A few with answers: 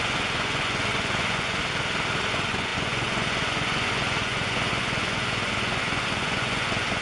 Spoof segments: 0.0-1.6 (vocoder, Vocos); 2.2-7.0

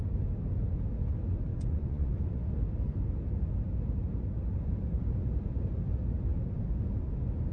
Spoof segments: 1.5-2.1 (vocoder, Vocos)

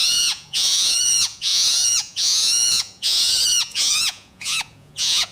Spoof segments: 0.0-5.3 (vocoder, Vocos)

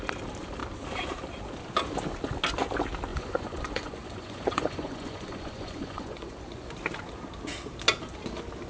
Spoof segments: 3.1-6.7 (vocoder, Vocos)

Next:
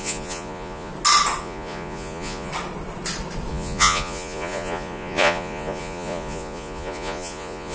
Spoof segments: 0.0-0.9 (vocoder, Vocos); 1.4-2.5; 3.5-7.7

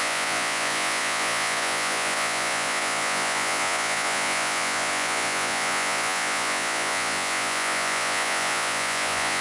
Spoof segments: 0.0-9.4 (vocoder, Vocos)

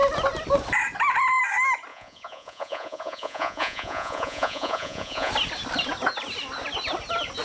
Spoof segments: 1.9-5.3 (vocoder, Vocos)

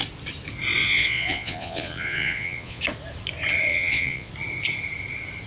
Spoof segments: 0.8-2.8 (vocoder, Vocos); 3.7-4.3